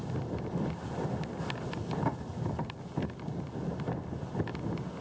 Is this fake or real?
real